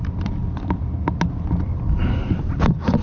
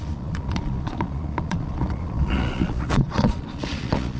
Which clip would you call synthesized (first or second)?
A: second